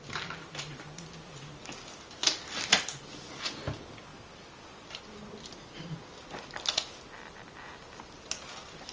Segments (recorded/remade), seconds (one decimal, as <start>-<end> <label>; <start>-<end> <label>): 0.0-4.1 recorded; 4.1-5.0 remade; 5.0-8.9 recorded